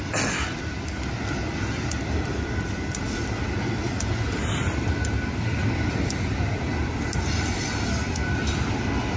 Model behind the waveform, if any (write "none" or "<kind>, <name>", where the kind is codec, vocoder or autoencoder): none